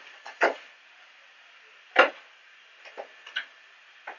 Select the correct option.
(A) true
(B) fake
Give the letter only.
B